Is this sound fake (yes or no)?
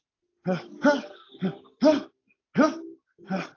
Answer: no